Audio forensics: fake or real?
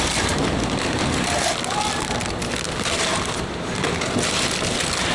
real